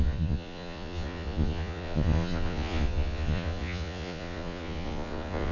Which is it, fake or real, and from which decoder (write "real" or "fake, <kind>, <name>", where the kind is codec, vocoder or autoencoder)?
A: fake, vocoder, Vocos